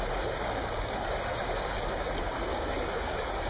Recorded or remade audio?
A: remade